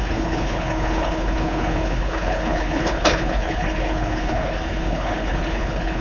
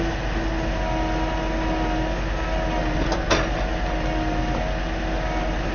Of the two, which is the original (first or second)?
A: second